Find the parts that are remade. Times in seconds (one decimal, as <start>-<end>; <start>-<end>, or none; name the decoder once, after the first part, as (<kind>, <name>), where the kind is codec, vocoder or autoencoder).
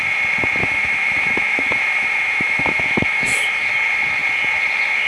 0.6-3.7 (autoencoder, DAC-VAE)